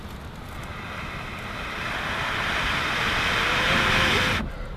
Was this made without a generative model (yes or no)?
yes